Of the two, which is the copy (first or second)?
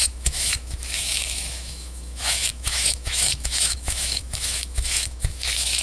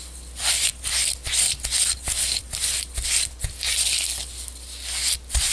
first